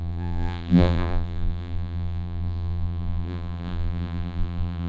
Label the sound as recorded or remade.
remade